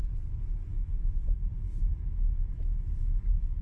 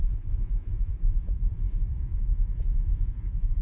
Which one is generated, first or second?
second